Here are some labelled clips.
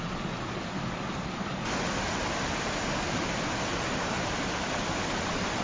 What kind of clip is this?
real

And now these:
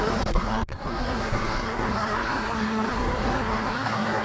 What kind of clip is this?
fake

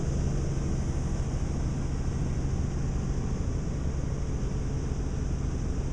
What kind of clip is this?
real